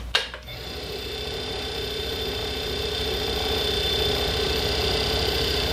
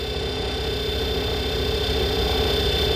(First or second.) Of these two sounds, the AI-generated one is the first